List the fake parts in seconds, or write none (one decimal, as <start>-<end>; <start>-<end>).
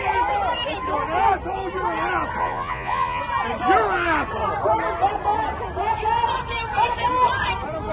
2.4-3.2